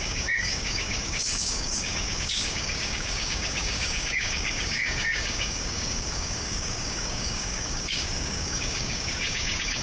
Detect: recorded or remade remade